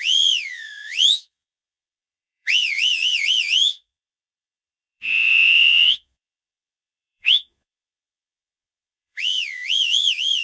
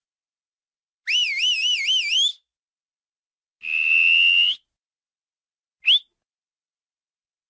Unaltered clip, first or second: second